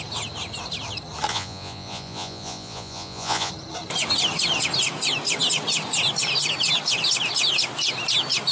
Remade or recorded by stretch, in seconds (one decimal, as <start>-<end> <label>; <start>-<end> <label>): 0.0-1.3 recorded; 1.3-3.5 remade; 3.5-8.5 recorded